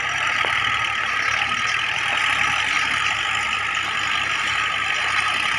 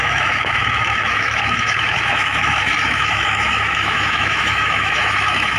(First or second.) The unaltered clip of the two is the first